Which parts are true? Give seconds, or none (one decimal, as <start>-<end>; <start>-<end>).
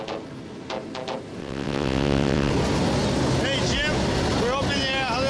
0.0-1.4; 2.5-5.3